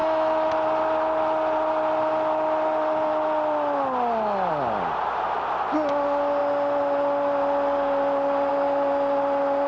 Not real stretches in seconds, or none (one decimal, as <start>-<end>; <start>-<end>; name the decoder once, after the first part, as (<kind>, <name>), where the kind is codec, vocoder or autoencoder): none